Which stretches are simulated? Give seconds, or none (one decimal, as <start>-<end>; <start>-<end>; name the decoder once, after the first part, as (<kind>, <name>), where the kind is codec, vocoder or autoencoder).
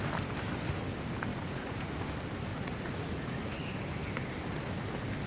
1.3-1.9 (vocoder, Vocos); 2.5-3.7